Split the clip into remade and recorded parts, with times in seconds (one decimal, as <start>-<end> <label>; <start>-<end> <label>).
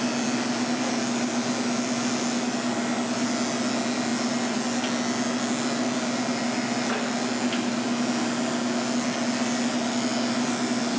0.0-11.0 recorded